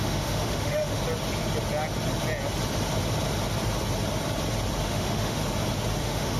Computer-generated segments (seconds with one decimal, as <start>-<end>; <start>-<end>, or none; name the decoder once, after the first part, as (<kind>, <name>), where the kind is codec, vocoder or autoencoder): 0.0-1.0 (autoencoder, DAC-VAE); 4.8-5.4; 6.0-6.4